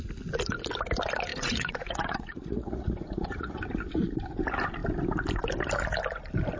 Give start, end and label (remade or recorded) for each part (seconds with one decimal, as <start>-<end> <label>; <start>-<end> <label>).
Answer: 0.0-1.3 recorded; 1.3-3.6 remade; 3.6-6.6 recorded